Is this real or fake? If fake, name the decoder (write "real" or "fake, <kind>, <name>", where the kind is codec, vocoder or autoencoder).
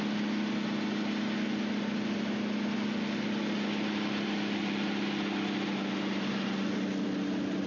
real